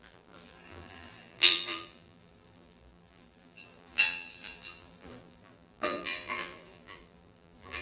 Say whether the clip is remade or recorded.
remade